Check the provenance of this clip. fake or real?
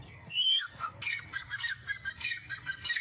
fake